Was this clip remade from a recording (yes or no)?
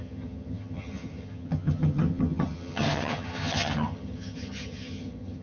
yes